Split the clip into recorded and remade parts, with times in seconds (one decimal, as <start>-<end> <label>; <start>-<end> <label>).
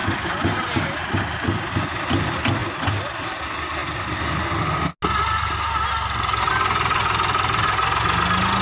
0.0-8.6 recorded